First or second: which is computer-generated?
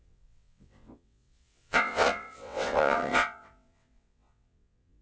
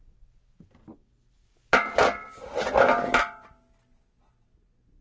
first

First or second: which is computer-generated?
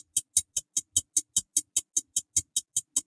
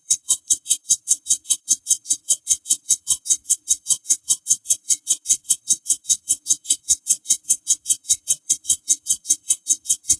second